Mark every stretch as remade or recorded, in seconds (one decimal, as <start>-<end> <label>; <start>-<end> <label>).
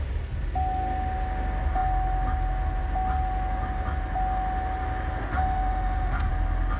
0.0-5.2 recorded; 5.2-6.3 remade; 6.3-6.8 recorded